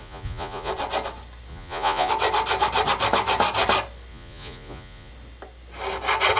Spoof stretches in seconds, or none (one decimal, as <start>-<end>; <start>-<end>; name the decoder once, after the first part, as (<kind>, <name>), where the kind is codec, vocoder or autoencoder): 0.0-0.7 (vocoder, Vocos); 1.5-2.1; 4.1-5.1